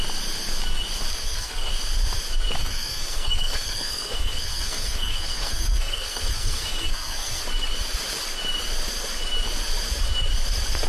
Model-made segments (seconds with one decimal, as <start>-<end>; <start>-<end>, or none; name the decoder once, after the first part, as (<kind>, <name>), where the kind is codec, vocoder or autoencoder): 1.1-1.7 (codec, SNAC); 2.6-7.4